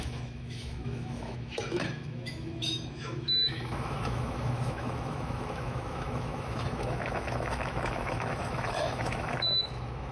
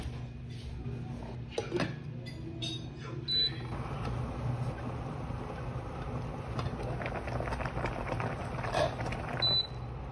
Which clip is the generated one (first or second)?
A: first